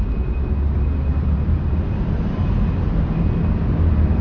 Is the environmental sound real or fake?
real